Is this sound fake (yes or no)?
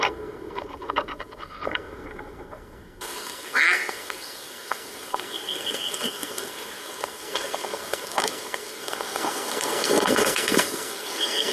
yes